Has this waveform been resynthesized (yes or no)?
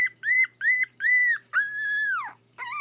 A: yes